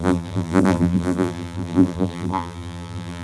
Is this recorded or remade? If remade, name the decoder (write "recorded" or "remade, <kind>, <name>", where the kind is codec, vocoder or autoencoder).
remade, vocoder, BigVGAN v2